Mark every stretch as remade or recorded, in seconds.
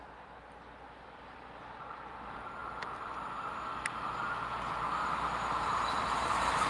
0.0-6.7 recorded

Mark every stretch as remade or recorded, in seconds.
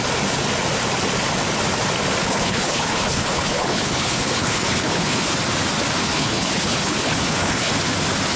0.0-2.2 recorded; 2.2-5.4 remade; 5.4-6.0 recorded; 6.0-7.7 remade; 7.7-8.4 recorded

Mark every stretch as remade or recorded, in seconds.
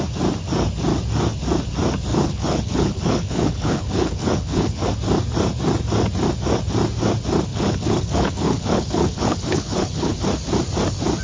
0.0-2.1 recorded; 2.1-4.9 remade; 4.9-7.5 recorded; 7.5-10.2 remade; 10.2-11.2 recorded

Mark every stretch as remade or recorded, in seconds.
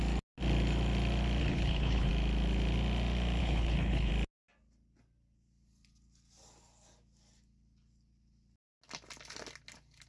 0.0-1.4 recorded; 1.4-2.1 remade; 2.1-3.4 recorded; 3.4-4.1 remade; 4.1-10.1 recorded